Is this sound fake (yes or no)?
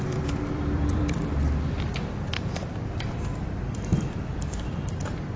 yes